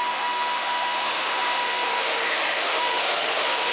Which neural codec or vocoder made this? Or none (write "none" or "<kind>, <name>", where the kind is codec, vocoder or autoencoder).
autoencoder, DAC-VAE